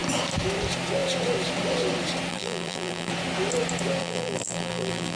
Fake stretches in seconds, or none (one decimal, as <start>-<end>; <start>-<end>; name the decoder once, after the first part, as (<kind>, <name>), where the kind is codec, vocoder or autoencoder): 2.3-3.1 (vocoder, BigVGAN v2); 4.0-5.2